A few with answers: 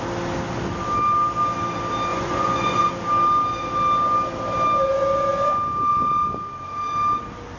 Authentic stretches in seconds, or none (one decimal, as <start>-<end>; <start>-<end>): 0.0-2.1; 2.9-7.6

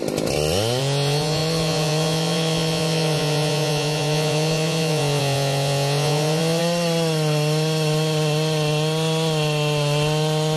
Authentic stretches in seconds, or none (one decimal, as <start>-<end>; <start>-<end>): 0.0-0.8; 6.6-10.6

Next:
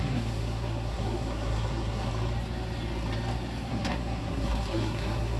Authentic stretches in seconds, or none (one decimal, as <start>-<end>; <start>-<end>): 2.1-3.7

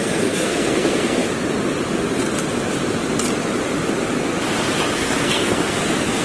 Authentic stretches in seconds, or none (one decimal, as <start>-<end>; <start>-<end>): 1.2-4.9

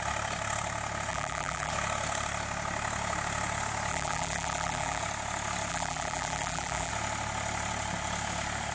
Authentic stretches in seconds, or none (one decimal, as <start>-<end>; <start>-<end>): 0.0-1.1; 1.7-3.9; 5.0-5.7; 6.9-8.7

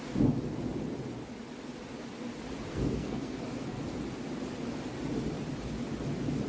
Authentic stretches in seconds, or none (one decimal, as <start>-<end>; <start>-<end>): 0.0-2.7; 3.8-6.5

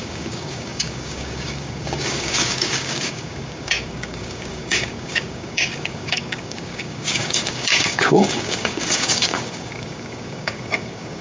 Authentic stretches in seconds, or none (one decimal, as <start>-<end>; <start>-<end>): none

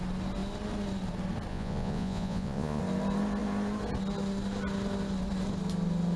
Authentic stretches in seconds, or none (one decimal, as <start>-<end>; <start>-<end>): 0.0-1.5; 2.8-6.2